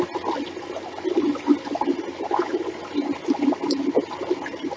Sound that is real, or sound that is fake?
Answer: real